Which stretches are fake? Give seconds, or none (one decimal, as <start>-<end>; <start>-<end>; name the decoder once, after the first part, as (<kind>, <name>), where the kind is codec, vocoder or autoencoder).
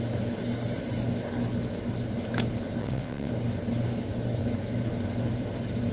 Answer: 2.8-3.3 (vocoder, WaveNeXt)